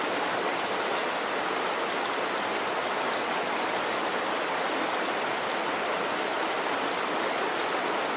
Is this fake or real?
real